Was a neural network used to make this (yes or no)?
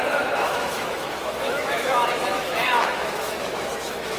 yes